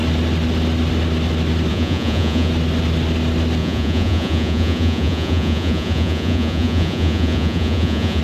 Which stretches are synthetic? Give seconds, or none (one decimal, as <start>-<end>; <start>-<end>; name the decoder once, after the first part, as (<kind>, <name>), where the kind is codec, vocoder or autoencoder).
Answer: 1.7-2.5 (vocoder, Vocos); 3.6-8.2